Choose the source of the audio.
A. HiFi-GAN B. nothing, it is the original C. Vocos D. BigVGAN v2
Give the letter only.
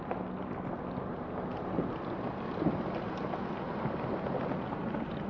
B